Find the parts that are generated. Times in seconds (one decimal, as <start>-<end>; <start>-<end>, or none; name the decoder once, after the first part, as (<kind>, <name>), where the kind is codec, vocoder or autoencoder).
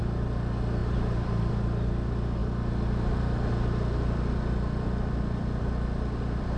0.8-1.5 (vocoder, BigVGAN v2)